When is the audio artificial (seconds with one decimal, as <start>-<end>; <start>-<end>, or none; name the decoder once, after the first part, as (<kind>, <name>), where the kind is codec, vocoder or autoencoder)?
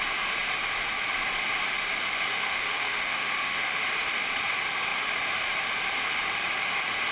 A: 2.3-3.8 (autoencoder, DAC-VAE)